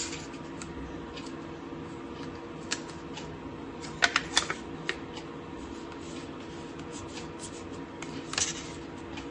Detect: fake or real real